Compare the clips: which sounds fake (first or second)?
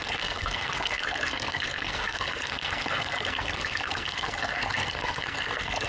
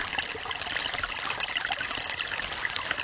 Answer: first